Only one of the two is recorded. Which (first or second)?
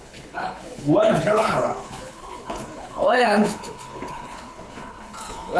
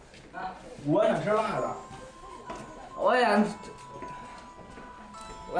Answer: second